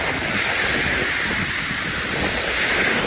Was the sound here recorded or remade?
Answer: recorded